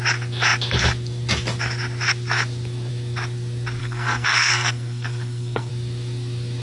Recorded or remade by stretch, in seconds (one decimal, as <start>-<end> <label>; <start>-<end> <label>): 0.0-3.8 recorded; 3.8-5.7 remade; 5.7-6.6 recorded